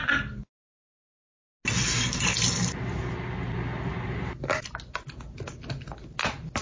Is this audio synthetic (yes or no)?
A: no